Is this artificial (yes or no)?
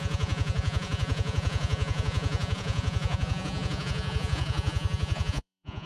yes